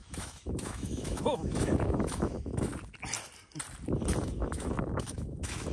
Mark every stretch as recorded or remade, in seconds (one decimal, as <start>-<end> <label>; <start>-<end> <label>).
0.0-2.7 remade; 2.7-4.2 recorded; 4.2-5.7 remade